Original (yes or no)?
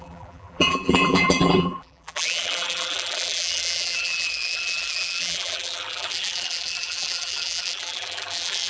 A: no